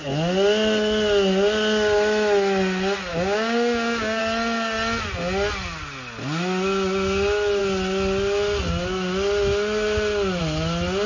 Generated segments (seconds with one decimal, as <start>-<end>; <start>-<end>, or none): 3.1-4.2